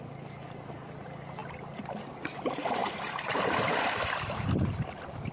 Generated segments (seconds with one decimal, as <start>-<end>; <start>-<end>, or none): 1.4-2.0; 2.8-5.3